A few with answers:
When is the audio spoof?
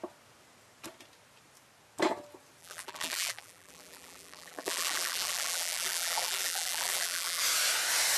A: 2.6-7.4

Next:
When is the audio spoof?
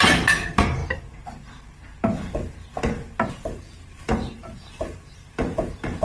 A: 0.0-0.8; 3.3-6.0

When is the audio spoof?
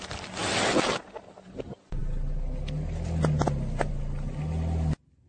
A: none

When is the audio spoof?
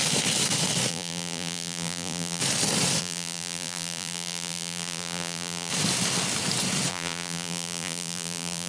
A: 0.9-2.4; 3.0-5.7; 6.9-8.7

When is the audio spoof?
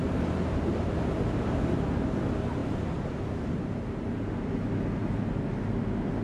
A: none